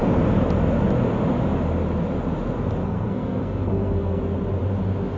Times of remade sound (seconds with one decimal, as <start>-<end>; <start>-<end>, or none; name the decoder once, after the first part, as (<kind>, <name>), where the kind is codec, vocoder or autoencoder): 2.8-4.2 (codec, SNAC)